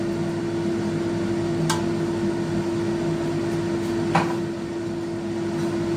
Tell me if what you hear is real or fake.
real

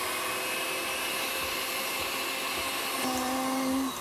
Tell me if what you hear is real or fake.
real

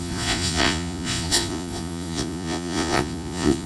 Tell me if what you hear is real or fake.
fake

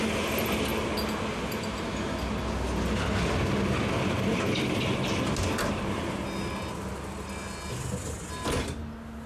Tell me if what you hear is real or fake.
real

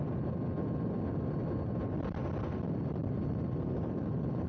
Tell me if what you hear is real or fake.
real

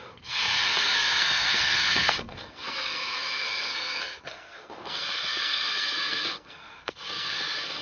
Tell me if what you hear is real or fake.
fake